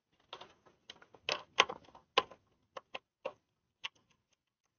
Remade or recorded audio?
recorded